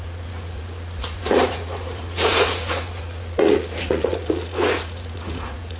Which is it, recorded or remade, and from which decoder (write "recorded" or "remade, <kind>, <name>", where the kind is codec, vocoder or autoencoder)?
remade, vocoder, Vocos